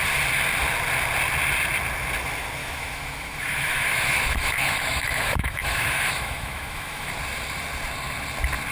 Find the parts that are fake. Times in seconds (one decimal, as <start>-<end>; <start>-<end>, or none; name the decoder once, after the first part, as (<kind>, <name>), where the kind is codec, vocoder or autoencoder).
2.6-7.1 (autoencoder, DAC-VAE)